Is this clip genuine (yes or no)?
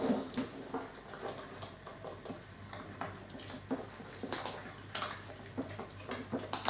yes